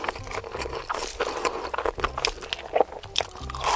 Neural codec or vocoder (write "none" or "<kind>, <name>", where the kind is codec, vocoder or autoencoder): none